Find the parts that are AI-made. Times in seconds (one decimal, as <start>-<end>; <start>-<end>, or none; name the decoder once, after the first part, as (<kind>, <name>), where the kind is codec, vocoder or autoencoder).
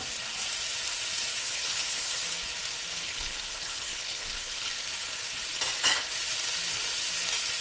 1.4-2.2 (codec, HILCodec); 2.9-4.7